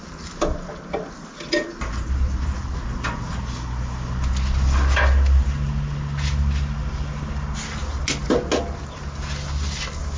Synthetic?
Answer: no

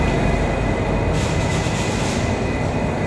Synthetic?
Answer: no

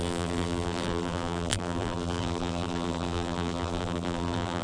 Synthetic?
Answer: yes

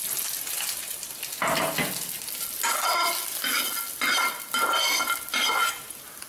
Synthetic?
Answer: no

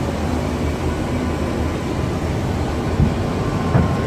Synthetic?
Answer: no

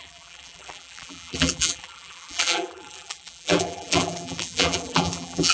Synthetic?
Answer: yes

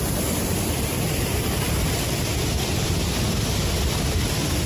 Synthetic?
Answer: yes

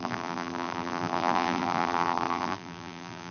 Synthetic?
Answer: yes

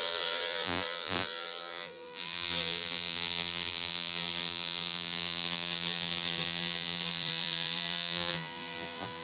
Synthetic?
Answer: yes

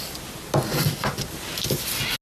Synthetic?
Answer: no